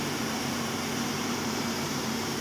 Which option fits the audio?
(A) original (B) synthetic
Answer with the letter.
B